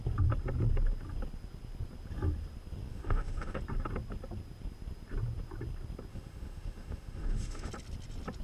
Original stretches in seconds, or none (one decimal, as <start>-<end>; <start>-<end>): 0.0-2.9; 3.6-6.1; 7.7-8.4